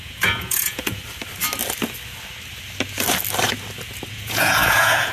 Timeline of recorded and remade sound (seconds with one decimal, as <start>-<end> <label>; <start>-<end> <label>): 0.0-1.0 remade; 1.0-4.1 recorded; 4.1-5.1 remade